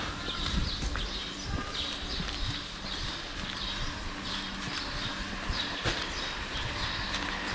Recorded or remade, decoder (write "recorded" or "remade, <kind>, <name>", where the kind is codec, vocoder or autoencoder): recorded